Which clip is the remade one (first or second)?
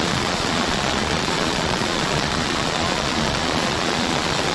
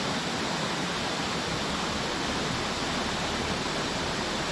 first